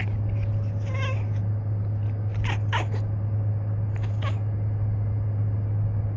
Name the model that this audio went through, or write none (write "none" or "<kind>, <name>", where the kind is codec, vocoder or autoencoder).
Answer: none